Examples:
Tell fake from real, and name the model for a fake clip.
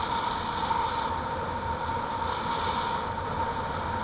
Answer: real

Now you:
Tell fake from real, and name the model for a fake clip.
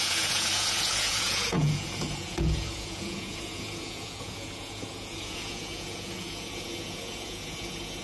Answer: fake, vocoder, Vocos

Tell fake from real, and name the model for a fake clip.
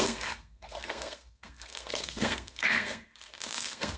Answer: fake, codec, SNAC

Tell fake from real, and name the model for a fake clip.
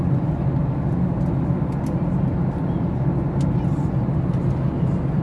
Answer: real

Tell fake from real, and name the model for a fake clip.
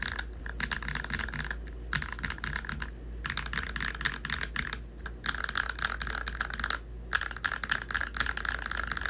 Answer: real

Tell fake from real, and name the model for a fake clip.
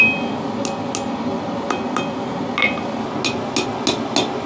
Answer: real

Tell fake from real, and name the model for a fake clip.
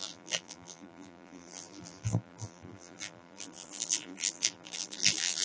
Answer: fake, vocoder, BigVGAN v2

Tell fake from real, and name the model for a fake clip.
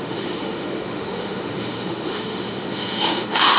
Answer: fake, autoencoder, DAC-VAE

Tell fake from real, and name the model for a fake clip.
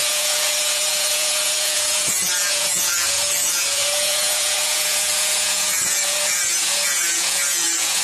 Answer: fake, vocoder, Vocos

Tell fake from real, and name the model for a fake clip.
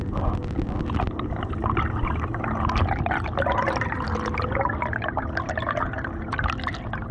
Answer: real